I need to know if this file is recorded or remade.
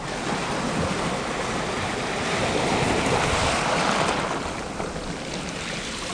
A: recorded